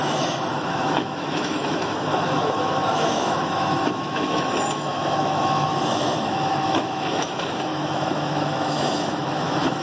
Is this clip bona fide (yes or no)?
no